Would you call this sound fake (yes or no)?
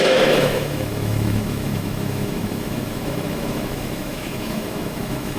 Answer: yes